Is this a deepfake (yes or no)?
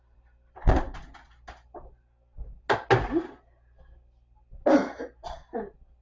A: no